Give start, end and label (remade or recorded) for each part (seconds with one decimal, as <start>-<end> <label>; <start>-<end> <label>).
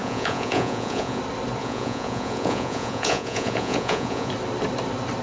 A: 0.0-1.2 remade; 1.2-1.6 recorded; 1.6-4.3 remade; 4.3-5.2 recorded